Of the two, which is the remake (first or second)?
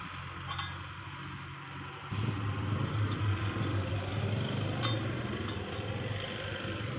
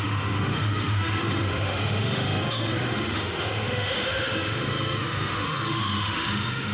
second